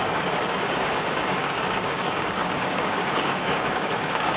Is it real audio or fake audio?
fake